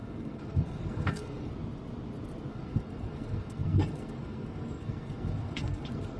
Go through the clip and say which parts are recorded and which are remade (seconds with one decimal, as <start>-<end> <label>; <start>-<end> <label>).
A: 0.0-1.5 remade; 1.5-2.5 recorded; 2.5-6.2 remade